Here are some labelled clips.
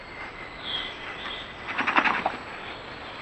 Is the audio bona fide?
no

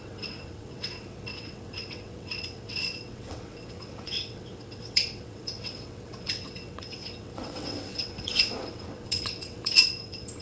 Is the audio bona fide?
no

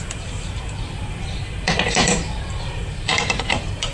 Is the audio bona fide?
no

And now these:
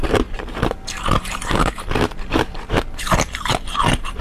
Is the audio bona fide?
no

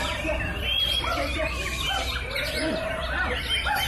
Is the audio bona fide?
no